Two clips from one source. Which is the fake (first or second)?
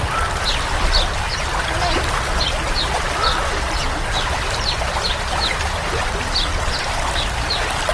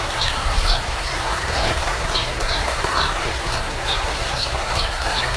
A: second